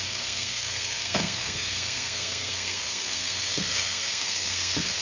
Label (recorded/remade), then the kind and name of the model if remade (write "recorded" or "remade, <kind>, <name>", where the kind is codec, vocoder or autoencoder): remade, codec, SNAC